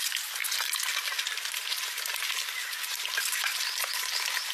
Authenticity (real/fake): real